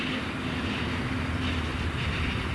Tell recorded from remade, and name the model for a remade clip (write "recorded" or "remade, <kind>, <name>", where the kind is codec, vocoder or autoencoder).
recorded